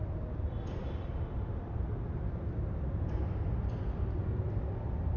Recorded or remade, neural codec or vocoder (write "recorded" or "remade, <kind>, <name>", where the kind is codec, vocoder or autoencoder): recorded